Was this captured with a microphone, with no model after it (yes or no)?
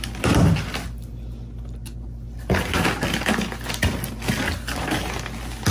yes